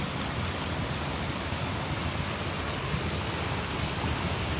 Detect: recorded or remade recorded